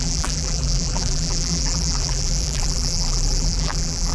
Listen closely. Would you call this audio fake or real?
fake